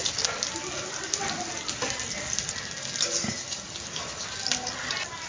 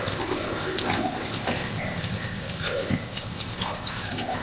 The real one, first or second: first